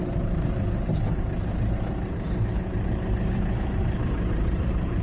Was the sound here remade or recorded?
remade